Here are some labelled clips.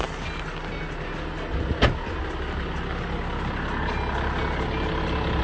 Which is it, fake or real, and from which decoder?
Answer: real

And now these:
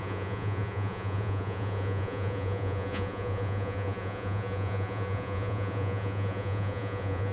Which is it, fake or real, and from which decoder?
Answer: fake, vocoder, Vocos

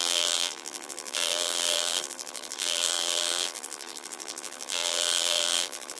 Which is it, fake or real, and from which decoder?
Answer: fake, vocoder, BigVGAN v2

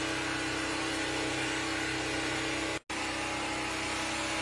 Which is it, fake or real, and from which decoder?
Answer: real